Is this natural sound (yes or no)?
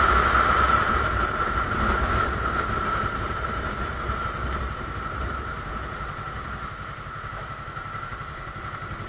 no